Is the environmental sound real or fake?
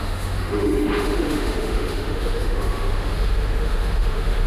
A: fake